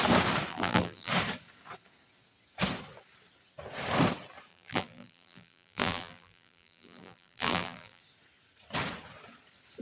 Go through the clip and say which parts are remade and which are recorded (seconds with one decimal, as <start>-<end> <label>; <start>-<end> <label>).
0.0-0.5 recorded; 0.5-1.1 remade; 1.1-4.5 recorded; 4.5-8.0 remade; 8.0-9.8 recorded